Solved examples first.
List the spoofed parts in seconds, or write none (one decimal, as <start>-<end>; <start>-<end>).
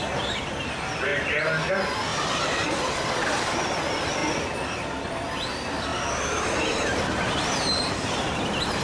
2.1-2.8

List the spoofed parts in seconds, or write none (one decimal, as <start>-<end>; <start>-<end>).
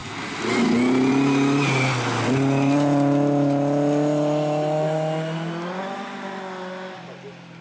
none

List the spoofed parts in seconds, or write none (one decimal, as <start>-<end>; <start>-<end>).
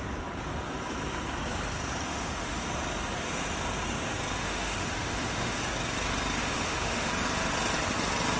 2.1-2.6; 4.4-5.6; 6.4-7.1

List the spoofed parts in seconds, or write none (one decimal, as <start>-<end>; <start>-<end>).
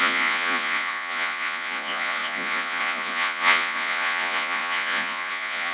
0.0-5.7